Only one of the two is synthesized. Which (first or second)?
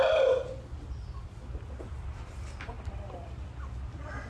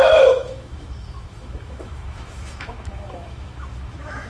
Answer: second